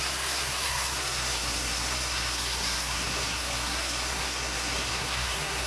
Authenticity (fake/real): fake